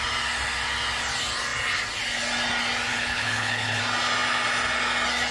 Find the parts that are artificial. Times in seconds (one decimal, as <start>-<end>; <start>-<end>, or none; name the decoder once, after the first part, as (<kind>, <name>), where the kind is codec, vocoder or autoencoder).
2.9-3.8 (codec, HILCodec)